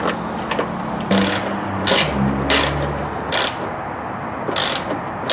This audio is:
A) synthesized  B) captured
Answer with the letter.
B